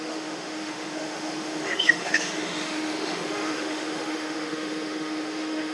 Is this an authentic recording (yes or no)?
no